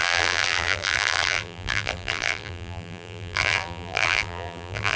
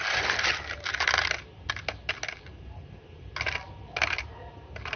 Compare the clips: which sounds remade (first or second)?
first